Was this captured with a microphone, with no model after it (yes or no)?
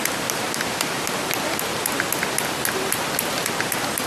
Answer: yes